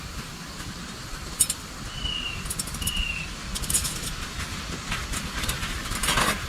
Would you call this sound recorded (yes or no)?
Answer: yes